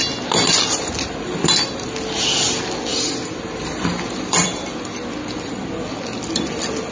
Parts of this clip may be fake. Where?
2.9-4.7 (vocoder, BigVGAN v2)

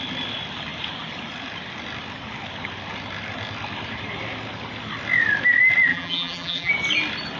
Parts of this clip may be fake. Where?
5.9-6.7 (vocoder, BigVGAN v2)

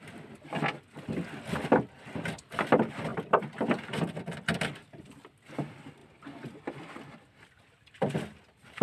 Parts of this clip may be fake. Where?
none

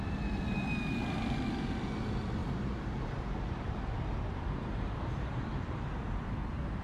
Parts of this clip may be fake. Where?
2.4-6.8 (vocoder, BigVGAN v2)

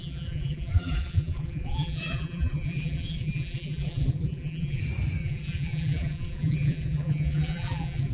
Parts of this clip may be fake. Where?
0.0-4.8 (vocoder, BigVGAN v2); 5.2-8.1